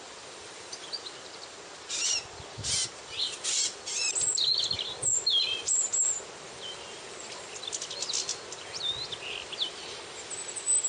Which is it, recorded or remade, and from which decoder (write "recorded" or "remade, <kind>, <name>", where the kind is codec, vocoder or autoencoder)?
remade, vocoder, BigVGAN v2